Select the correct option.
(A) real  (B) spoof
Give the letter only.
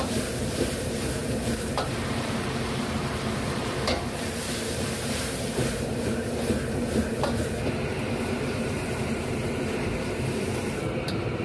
B